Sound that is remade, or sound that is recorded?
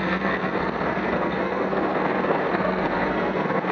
remade